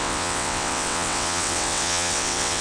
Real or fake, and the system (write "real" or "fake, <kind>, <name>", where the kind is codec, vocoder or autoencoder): fake, vocoder, WaveNeXt